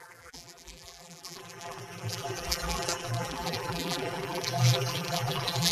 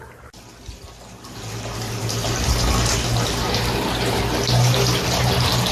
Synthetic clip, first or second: first